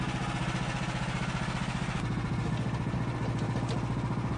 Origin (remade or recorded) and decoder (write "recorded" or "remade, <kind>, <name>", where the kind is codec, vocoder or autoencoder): recorded